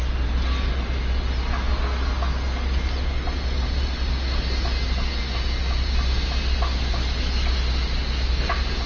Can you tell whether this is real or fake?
real